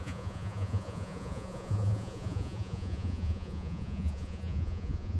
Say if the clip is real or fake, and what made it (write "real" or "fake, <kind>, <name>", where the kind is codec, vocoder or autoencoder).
fake, vocoder, Vocos